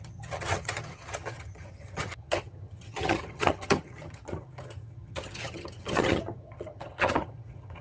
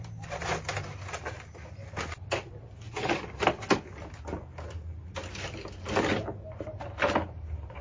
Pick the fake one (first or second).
first